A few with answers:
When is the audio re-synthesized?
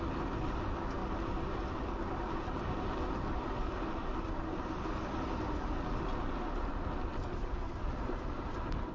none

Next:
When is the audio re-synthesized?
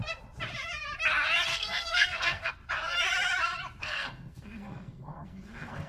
1.5-2.5 (codec, SNAC); 3.8-5.9